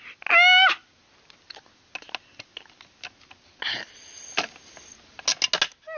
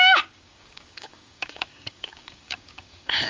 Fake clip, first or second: second